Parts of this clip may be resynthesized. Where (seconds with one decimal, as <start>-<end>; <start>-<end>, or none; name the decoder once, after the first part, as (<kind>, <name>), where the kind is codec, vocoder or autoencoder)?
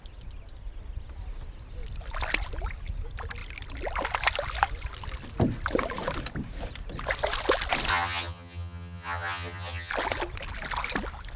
7.9-9.9 (vocoder, HiFi-GAN)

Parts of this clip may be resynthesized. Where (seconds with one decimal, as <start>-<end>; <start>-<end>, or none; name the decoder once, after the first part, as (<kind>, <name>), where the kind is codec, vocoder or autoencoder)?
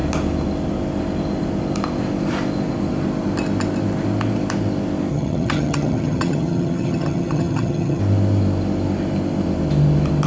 5.1-8.0 (vocoder, HiFi-GAN)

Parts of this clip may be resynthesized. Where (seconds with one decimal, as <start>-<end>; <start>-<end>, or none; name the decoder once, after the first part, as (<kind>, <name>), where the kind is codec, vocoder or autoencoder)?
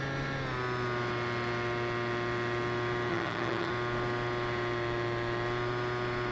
3.1-3.7 (vocoder, HiFi-GAN)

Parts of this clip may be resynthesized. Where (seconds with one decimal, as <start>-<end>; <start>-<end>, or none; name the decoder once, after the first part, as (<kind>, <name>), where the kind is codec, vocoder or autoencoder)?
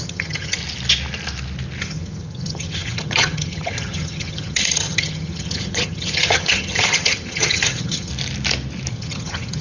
0.0-0.6 (vocoder, HiFi-GAN); 1.8-8.1; 8.9-9.6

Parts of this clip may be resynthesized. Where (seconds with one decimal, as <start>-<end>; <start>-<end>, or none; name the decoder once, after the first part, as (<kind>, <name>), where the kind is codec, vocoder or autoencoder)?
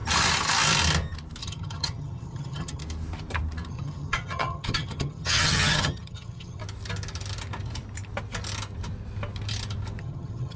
1.4-2.8 (vocoder, HiFi-GAN); 3.7-6.6; 10.0-10.6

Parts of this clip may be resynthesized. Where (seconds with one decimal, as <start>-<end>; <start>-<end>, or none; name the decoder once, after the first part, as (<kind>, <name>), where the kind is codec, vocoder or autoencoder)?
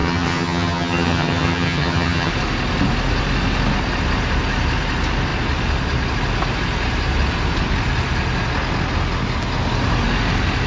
0.0-2.3 (vocoder, HiFi-GAN)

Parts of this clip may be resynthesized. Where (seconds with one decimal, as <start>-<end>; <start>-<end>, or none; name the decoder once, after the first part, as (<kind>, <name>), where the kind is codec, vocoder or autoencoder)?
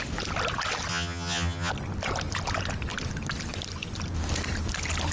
0.9-1.7 (vocoder, HiFi-GAN)